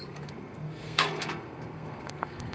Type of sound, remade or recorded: remade